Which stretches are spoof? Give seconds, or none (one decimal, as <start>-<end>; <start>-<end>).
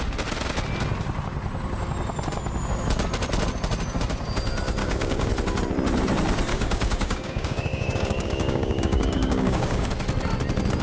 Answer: 4.8-5.3; 6.5-9.9